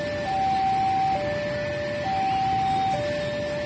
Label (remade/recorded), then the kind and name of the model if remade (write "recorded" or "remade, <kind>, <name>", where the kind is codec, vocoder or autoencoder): recorded